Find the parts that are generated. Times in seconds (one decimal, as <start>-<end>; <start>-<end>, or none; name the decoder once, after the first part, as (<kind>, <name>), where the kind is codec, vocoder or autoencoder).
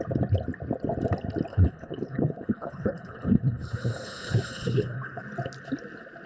1.5-5.2 (codec, HILCodec)